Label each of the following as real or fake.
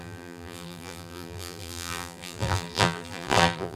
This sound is fake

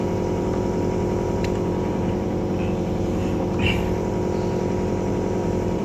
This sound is fake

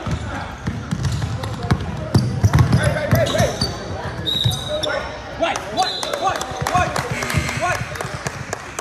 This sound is fake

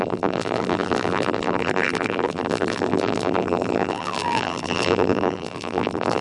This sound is fake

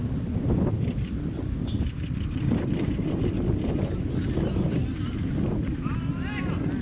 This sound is real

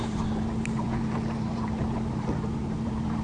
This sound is fake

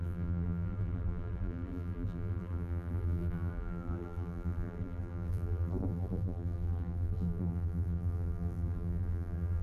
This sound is fake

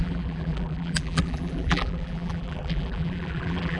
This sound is fake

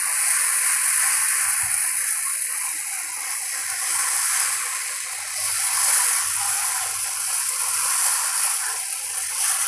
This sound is real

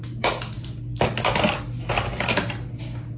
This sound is real